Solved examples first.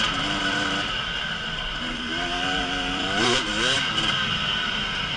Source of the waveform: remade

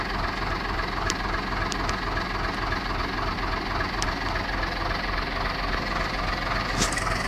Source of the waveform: recorded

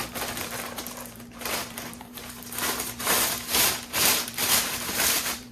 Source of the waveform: remade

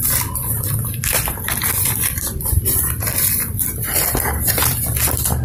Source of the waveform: remade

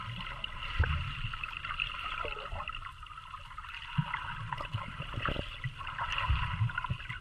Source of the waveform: recorded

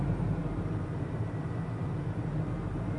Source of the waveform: remade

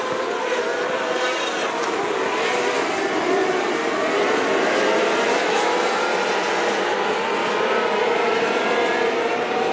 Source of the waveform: remade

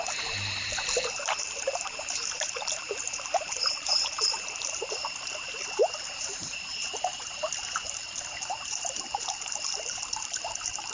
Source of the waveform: remade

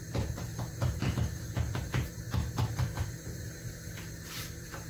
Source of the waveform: remade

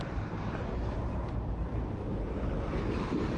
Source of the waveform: remade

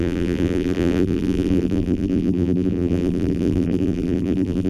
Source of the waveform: remade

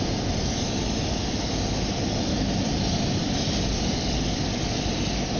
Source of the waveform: remade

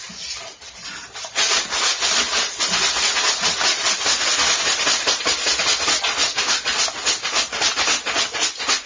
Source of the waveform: recorded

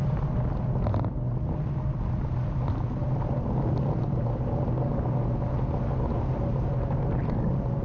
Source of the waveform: recorded